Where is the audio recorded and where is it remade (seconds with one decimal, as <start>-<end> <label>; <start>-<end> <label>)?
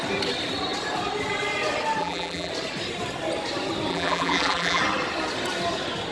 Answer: 0.0-2.0 recorded; 2.0-2.5 remade; 2.5-3.9 recorded; 3.9-4.8 remade; 4.8-6.1 recorded